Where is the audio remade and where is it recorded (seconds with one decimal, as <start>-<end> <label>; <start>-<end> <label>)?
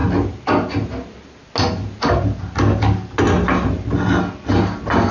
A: 0.0-5.1 recorded